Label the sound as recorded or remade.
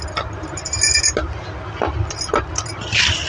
recorded